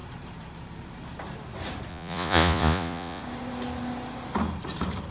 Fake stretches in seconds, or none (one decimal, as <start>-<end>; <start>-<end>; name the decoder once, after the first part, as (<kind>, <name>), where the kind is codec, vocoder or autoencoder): 1.9-3.2 (vocoder, Vocos)